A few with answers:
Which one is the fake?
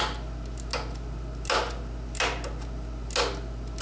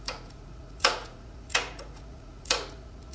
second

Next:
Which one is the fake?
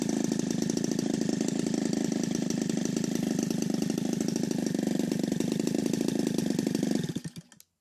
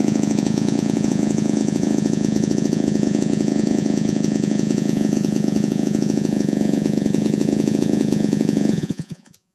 second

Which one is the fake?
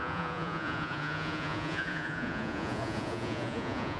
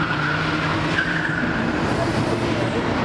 first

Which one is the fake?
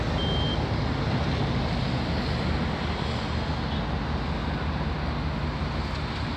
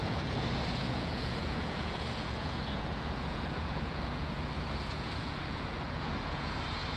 second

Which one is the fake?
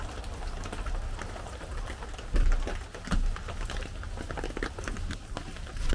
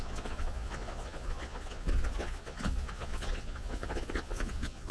second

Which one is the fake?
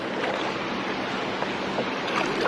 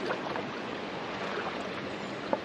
second